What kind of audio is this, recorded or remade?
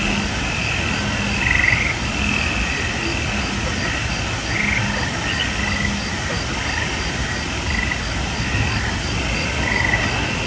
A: recorded